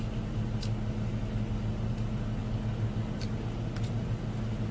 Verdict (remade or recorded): recorded